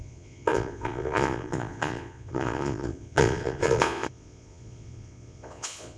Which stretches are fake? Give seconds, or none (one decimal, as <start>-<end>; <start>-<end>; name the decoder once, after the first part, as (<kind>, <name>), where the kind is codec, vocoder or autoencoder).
0.0-6.0 (vocoder, Vocos)